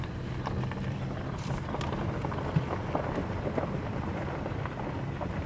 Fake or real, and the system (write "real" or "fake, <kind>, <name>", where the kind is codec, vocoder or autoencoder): fake, vocoder, BigVGAN v2